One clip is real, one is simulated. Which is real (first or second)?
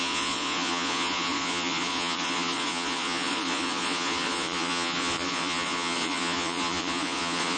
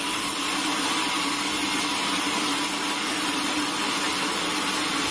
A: second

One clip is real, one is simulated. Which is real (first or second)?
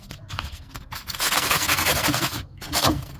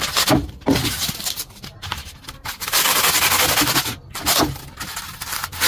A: second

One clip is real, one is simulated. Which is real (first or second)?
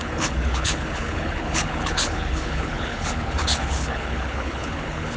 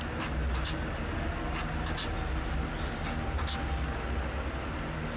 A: second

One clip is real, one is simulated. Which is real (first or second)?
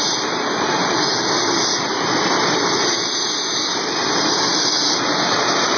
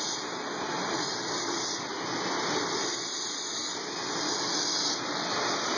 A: second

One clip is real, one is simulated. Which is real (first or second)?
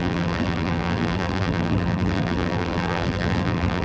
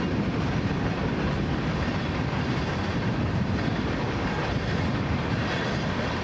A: second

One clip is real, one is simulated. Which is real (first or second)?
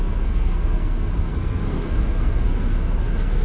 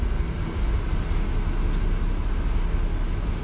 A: second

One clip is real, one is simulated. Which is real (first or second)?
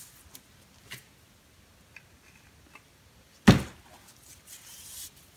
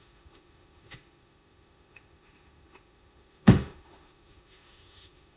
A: first